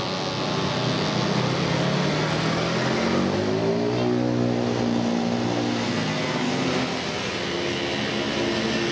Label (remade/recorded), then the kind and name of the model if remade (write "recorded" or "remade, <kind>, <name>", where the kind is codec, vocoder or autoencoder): recorded